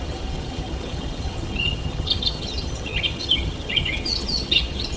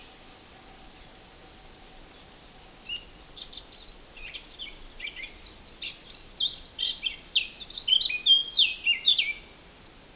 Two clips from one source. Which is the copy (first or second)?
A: first